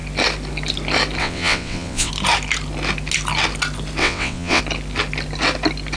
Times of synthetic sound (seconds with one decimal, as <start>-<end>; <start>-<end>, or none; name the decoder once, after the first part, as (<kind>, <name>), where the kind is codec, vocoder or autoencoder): 1.2-2.1 (vocoder, WaveNeXt); 4.0-4.6